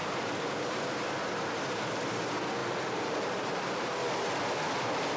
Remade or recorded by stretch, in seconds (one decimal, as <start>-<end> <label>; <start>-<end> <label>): 0.0-4.0 remade; 4.0-5.2 recorded